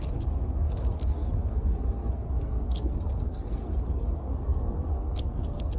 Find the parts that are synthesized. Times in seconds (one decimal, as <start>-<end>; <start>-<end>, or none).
0.0-5.8